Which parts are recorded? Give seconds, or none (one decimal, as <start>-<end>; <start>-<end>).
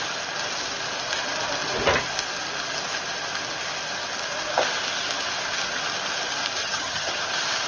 0.0-6.6; 7.2-7.7